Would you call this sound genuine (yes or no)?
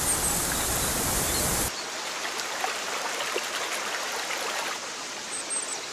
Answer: yes